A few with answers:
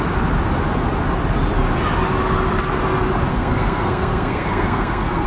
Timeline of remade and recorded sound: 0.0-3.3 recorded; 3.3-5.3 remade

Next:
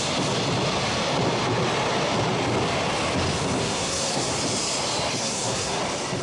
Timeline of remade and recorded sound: 0.0-3.6 recorded; 3.6-4.3 remade; 4.3-5.2 recorded; 5.2-5.8 remade; 5.8-6.2 recorded